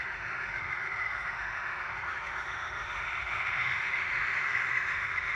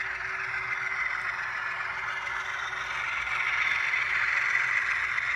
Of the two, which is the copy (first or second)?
first